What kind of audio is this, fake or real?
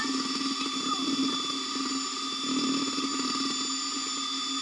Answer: real